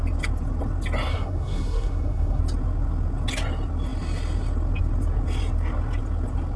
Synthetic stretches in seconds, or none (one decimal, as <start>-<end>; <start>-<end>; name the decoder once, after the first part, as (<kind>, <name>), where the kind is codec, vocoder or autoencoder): 1.1-2.4 (codec, SNAC)